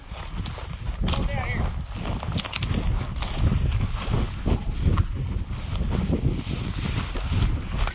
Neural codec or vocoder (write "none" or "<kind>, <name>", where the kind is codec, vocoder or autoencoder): none